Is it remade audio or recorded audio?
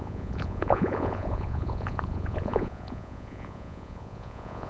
remade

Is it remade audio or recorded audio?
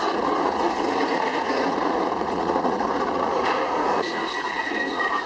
remade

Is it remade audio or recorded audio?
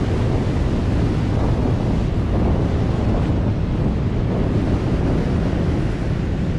recorded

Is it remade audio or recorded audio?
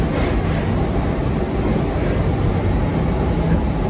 recorded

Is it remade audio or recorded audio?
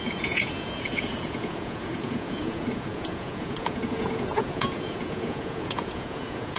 remade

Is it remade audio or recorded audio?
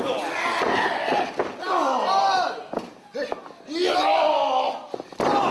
recorded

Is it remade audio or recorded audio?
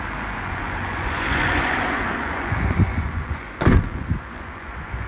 remade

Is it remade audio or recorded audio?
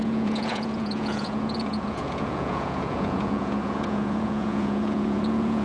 remade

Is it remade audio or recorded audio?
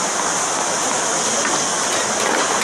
recorded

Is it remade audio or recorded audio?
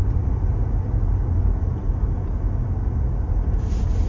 recorded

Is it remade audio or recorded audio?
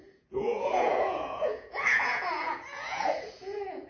remade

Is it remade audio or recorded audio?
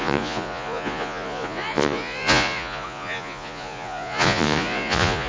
remade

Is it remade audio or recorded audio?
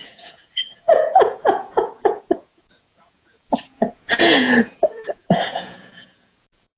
remade